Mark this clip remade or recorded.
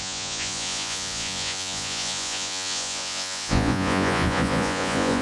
remade